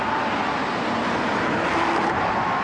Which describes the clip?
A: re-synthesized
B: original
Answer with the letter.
B